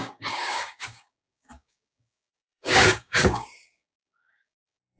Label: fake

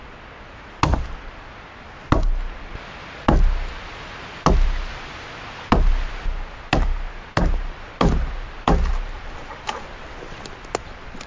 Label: real